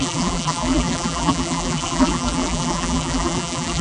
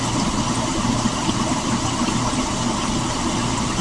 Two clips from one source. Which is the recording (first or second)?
second